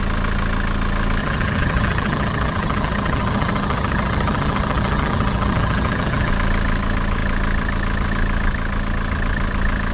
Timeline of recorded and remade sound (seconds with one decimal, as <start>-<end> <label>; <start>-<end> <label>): 0.0-1.2 recorded; 1.2-6.3 remade; 6.3-9.9 recorded